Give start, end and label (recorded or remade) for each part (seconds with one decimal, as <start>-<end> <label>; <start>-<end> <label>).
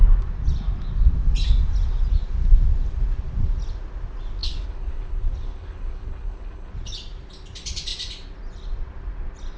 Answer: 0.0-4.4 recorded; 4.4-6.7 remade; 6.7-9.6 recorded